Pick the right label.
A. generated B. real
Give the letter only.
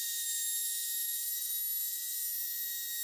B